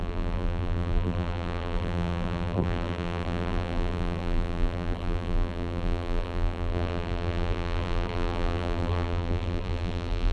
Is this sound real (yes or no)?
no